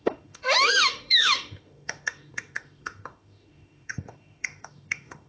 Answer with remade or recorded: remade